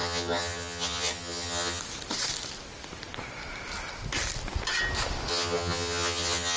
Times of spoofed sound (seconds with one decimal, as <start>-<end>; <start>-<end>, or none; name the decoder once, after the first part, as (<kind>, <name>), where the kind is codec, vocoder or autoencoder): 0.0-1.8 (vocoder, HiFi-GAN); 5.3-6.6